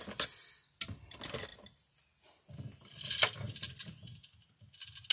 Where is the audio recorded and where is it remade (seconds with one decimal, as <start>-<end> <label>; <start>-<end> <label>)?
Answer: 0.0-1.5 recorded; 1.5-2.9 remade; 2.9-5.1 recorded